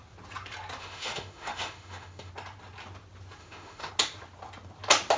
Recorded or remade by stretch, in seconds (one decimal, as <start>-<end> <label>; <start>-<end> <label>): 0.0-0.8 recorded; 0.8-2.3 remade; 2.3-3.4 recorded; 3.4-3.9 remade; 3.9-5.2 recorded